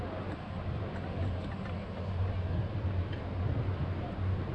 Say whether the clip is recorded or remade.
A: recorded